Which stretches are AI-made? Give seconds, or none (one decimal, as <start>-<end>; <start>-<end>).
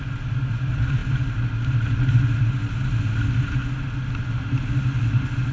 none